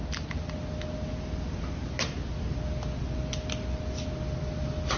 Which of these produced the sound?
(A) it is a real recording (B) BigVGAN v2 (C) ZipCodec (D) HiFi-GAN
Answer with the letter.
A